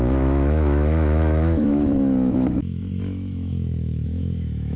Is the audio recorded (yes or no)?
no